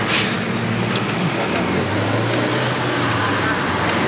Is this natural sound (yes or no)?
yes